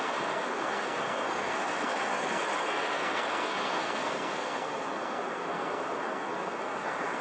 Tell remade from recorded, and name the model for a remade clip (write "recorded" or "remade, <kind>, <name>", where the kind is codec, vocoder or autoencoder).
remade, codec, SNAC